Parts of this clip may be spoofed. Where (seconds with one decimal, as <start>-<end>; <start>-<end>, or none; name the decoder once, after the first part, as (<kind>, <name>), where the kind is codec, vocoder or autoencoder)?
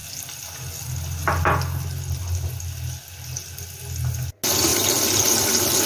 none